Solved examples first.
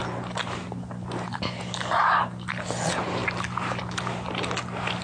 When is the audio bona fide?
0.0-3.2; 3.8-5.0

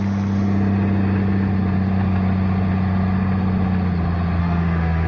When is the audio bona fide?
0.0-4.4

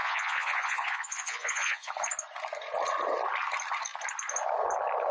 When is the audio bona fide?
1.9-5.1

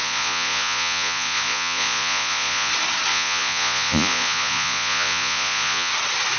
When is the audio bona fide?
2.7-3.1; 5.9-6.4

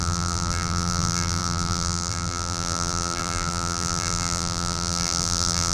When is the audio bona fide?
none

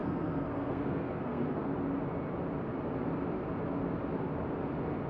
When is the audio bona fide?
1.7-5.1

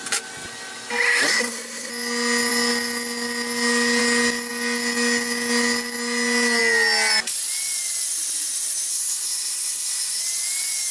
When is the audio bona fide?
0.0-1.3; 1.9-8.9; 10.2-10.9